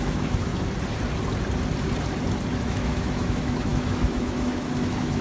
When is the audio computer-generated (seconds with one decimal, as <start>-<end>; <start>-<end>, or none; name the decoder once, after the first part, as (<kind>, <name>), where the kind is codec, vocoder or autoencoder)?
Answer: 0.0-0.5 (autoencoder, DAC-VAE); 2.6-5.2